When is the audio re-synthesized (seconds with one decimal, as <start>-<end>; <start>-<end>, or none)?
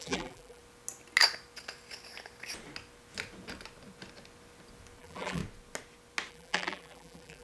0.0-0.6; 5.0-5.4; 6.3-7.4